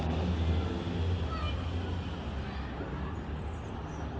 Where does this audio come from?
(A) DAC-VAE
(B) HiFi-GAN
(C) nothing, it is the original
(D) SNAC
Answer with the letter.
C